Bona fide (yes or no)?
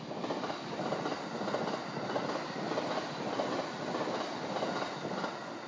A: yes